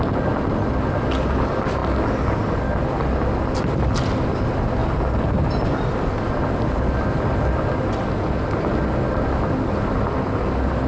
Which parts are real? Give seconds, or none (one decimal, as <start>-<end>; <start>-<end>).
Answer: 0.0-10.9